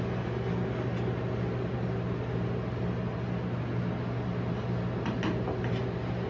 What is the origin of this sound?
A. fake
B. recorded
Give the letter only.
B